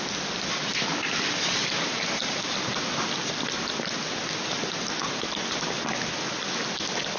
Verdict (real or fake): real